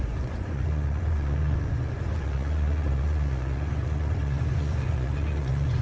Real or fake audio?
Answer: fake